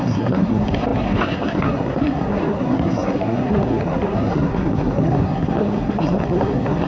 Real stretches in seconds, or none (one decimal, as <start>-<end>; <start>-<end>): none